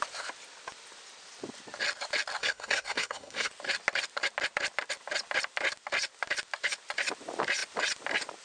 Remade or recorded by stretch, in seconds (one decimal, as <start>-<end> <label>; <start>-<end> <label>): 0.0-2.4 recorded; 2.4-3.5 remade; 3.5-8.4 recorded